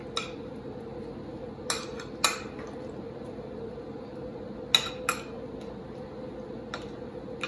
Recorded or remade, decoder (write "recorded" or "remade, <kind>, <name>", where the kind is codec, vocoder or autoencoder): recorded